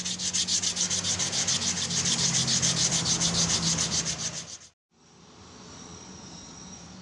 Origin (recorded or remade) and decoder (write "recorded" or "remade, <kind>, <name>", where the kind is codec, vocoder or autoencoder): recorded